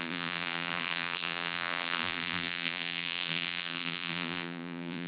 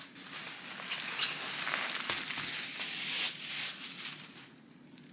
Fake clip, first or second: first